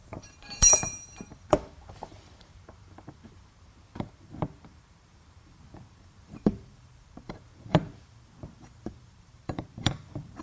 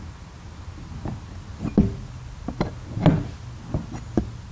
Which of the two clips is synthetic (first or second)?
first